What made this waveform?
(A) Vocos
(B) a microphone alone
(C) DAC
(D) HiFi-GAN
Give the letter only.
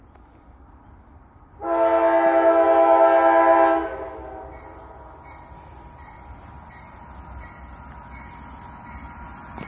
B